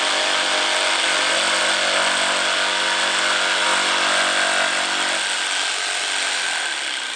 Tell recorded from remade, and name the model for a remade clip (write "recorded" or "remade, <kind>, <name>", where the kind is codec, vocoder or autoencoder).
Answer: recorded